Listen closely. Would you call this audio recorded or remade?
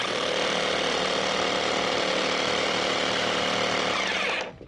recorded